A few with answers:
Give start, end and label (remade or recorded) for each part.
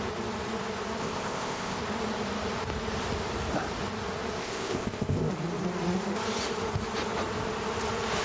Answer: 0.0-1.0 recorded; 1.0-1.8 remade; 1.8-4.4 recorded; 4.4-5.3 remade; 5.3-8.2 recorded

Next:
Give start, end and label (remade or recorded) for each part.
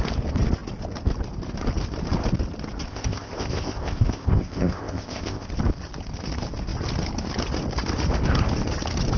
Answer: 0.0-2.9 recorded; 2.9-5.5 remade; 5.5-9.2 recorded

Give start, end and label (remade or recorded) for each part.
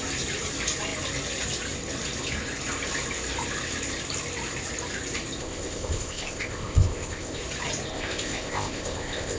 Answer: 0.0-5.4 recorded; 5.4-7.4 remade; 7.4-7.9 recorded; 7.9-9.4 remade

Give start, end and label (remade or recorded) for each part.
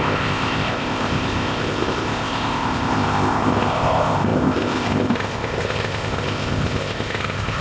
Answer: 0.0-7.6 remade